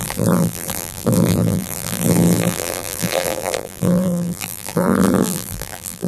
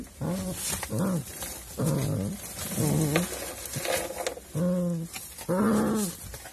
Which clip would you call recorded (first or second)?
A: second